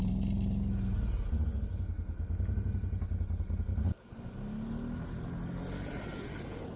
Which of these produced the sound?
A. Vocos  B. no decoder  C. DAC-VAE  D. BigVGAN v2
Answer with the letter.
B